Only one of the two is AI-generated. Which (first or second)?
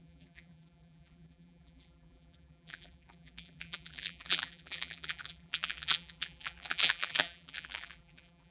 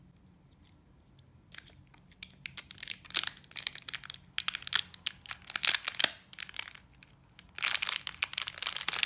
first